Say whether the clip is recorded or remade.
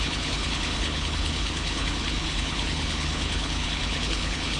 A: remade